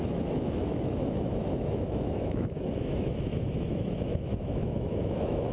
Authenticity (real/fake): fake